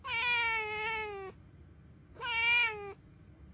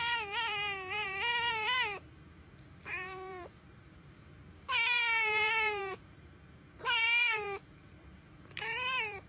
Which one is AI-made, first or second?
second